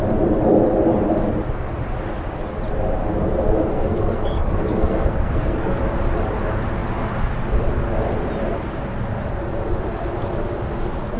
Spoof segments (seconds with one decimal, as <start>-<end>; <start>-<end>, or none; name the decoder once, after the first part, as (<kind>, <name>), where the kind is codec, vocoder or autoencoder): 3.7-5.8 (codec, SNAC)